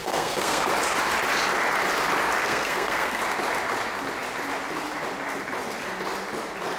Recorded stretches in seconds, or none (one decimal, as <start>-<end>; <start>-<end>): 0.7-2.4; 3.2-6.8